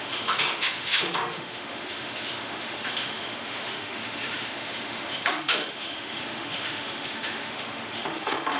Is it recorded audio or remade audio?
remade